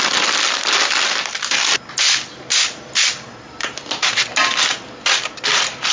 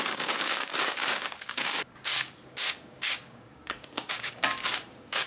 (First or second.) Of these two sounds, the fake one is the second